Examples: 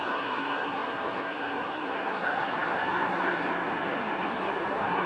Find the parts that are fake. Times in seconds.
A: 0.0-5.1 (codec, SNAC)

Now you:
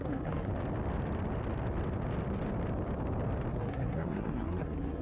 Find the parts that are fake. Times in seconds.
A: 0.0-0.5 (codec, SNAC); 3.5-5.0

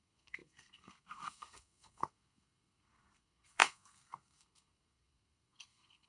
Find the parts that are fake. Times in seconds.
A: 0.0-6.1 (codec, SNAC)

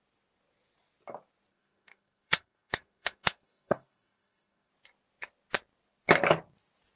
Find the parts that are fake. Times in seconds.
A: 1.5-4.7 (codec, SNAC)

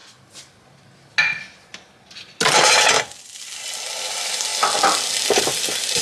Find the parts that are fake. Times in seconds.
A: none

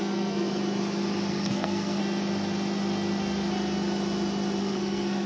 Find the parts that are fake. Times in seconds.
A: 0.0-0.6 (codec, SNAC); 1.3-2.0; 4.6-5.3

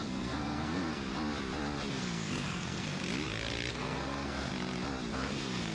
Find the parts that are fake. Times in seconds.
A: 0.0-1.1 (codec, SNAC); 1.9-3.0; 3.7-4.5; 5.1-5.7